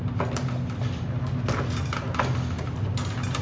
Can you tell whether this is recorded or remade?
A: recorded